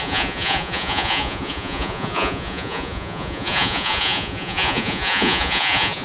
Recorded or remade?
remade